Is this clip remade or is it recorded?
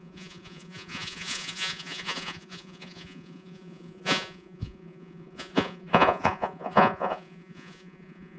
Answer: remade